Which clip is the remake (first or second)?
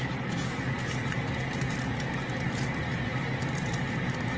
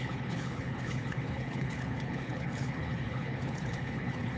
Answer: second